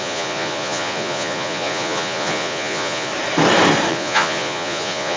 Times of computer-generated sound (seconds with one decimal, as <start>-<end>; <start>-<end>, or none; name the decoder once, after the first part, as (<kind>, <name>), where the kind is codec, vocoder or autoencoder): 0.0-3.1 (vocoder, Vocos); 3.9-5.2